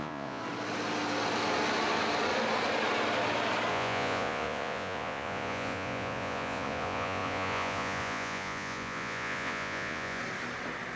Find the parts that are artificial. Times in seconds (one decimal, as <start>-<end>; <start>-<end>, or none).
0.0-0.4; 3.7-10.2